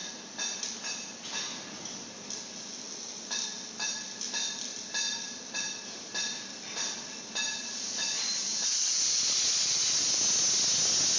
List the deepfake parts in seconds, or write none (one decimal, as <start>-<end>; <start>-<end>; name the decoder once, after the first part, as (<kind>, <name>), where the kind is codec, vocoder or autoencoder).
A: 0.0-0.6 (vocoder, BigVGAN v2); 4.7-7.3; 8.5-10.2